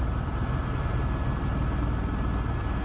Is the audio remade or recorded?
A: recorded